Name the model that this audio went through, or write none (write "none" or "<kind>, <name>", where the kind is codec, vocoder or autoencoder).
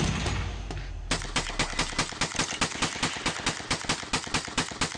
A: none